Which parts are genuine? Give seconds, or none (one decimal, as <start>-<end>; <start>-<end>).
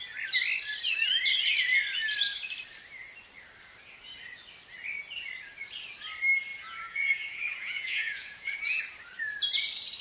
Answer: 0.0-6.5; 8.8-10.0